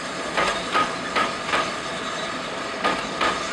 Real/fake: real